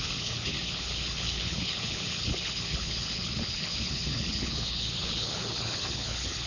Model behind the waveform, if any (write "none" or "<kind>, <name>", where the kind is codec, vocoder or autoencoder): codec, HILCodec